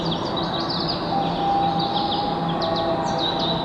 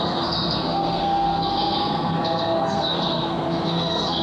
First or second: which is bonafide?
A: first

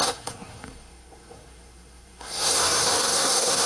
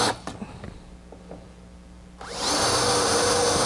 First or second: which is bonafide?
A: second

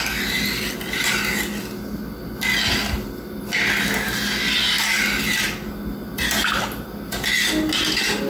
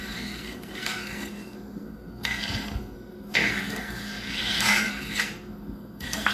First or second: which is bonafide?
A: first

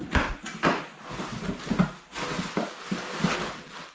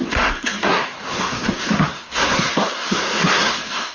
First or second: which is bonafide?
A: first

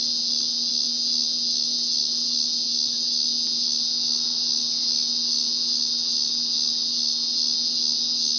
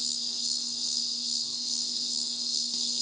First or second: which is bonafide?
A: first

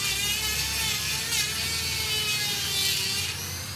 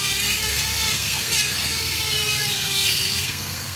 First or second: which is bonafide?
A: first